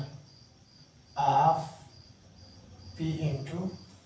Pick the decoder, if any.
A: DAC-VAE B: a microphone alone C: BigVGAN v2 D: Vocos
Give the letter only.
D